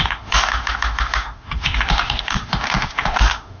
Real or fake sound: fake